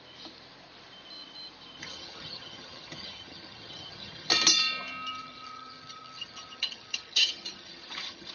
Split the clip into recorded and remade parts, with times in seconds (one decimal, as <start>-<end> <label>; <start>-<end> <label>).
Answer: 0.0-1.8 recorded; 1.8-4.3 remade; 4.3-5.2 recorded; 5.2-8.3 remade